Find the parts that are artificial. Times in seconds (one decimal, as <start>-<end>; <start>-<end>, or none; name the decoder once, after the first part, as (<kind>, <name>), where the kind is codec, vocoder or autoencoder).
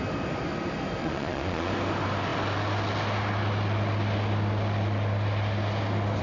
1.0-1.7 (vocoder, Vocos)